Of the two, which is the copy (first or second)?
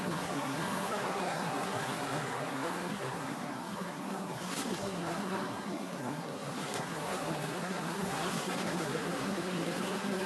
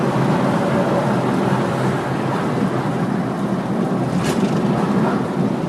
first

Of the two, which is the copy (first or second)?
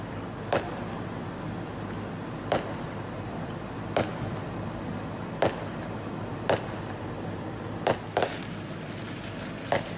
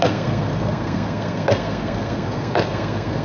second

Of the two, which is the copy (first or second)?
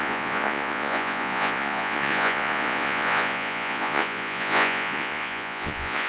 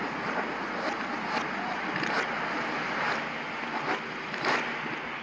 first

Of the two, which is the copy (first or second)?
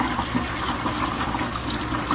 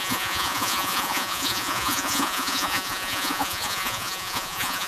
second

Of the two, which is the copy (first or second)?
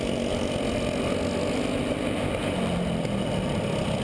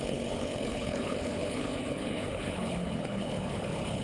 second